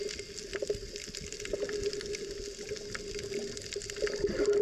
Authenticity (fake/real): real